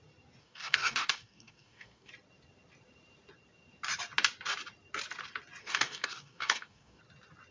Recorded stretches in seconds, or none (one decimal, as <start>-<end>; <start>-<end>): 0.0-0.4; 2.1-5.6; 7.0-7.5